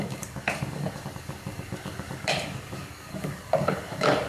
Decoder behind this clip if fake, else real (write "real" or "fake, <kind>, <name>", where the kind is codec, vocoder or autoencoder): fake, codec, DAC